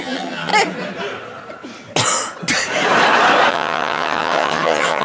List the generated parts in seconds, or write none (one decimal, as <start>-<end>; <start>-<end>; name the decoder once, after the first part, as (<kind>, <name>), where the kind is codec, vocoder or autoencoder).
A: 0.0-0.5 (vocoder, HiFi-GAN); 3.5-5.0